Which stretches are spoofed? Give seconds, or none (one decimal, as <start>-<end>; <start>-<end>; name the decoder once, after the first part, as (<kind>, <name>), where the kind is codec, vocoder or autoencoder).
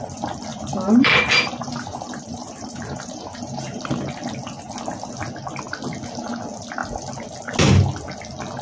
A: 0.5-3.8 (vocoder, BigVGAN v2)